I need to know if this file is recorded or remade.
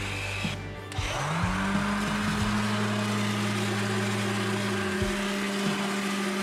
recorded